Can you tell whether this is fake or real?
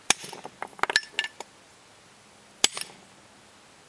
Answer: real